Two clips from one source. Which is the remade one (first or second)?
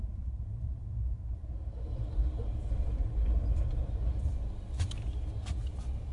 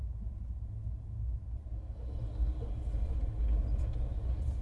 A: first